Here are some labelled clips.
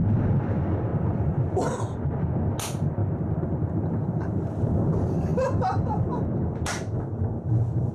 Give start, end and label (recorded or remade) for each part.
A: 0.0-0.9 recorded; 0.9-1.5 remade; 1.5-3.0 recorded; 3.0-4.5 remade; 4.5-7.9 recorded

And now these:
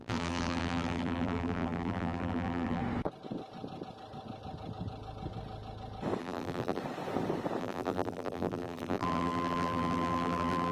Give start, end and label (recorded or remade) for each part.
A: 0.0-2.8 remade; 2.8-6.2 recorded; 6.2-6.8 remade; 6.8-7.6 recorded; 7.6-10.7 remade